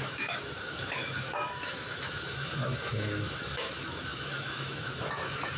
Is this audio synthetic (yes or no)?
yes